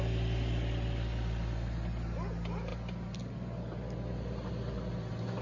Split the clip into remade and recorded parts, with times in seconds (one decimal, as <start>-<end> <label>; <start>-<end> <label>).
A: 0.0-5.4 recorded